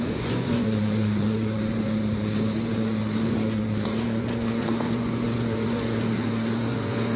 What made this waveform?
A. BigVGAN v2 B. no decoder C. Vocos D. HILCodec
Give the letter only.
C